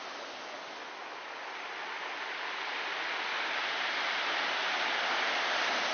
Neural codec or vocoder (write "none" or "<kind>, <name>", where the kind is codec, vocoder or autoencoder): none